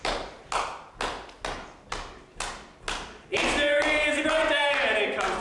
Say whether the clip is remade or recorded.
recorded